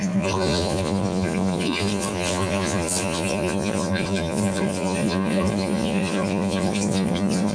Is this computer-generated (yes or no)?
yes